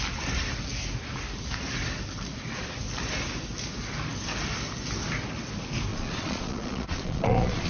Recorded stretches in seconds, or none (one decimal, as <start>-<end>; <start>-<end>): 0.0-5.9